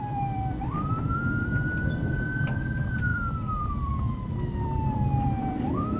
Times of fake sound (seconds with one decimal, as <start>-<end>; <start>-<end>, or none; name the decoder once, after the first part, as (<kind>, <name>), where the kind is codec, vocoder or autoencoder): 0.0-1.8 (vocoder, BigVGAN v2); 2.5-6.0